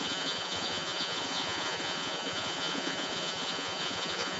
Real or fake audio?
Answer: fake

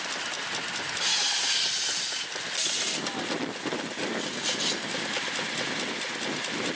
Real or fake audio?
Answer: real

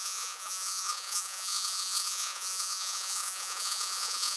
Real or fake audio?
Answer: fake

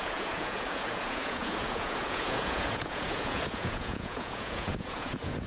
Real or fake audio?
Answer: fake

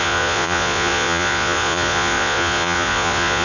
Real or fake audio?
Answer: fake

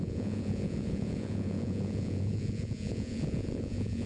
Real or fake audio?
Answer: fake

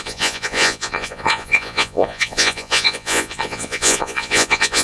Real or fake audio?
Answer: fake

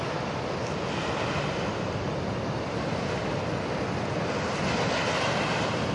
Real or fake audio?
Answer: real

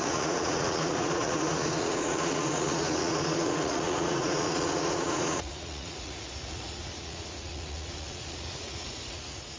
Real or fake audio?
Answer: fake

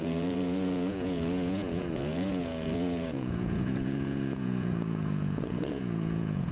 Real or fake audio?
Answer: fake